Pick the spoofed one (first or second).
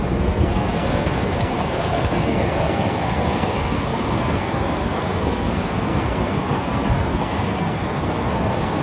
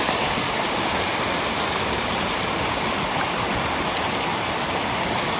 first